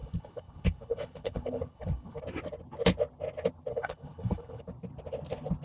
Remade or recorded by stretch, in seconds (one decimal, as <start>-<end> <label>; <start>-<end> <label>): 0.0-2.2 remade; 2.2-3.7 recorded; 3.7-4.6 remade; 4.6-5.6 recorded